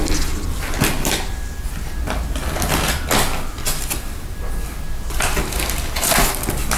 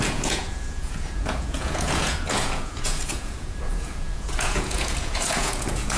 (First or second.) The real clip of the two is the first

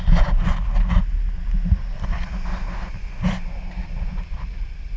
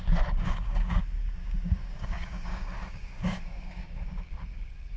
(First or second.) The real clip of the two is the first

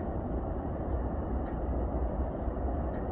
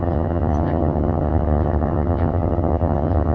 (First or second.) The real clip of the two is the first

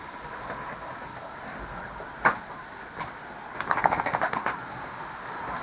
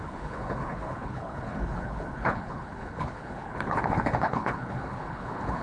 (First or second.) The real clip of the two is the first